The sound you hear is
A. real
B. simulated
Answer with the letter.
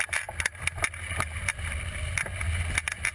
A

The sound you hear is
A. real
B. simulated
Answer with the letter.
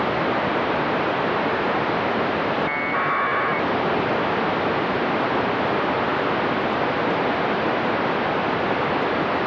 A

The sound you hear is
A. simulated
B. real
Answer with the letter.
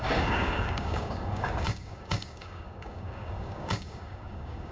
A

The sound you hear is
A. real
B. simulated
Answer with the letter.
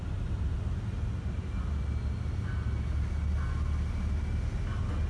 A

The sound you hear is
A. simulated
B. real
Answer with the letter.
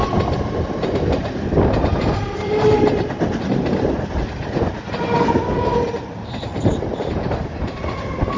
B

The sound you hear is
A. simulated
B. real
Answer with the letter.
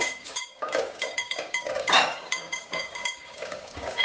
A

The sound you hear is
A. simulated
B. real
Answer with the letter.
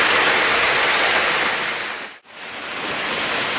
B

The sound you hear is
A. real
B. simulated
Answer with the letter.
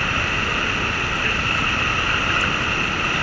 A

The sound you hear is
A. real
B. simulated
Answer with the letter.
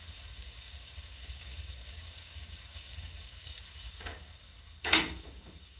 B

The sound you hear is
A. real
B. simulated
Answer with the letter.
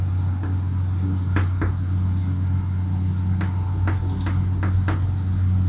A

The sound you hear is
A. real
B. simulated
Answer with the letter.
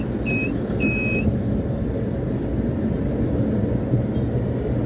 A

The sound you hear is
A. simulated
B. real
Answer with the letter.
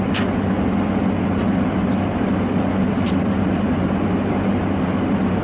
B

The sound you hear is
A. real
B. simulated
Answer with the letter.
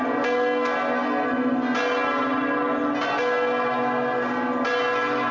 A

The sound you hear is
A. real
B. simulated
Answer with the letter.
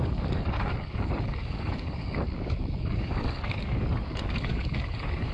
B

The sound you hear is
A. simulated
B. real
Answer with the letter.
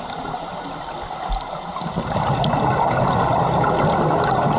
B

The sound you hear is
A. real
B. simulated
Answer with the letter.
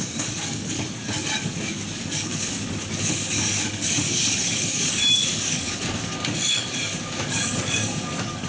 B